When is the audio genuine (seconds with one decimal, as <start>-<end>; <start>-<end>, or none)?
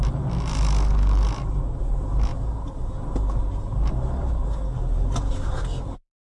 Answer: 0.0-2.3; 2.9-6.3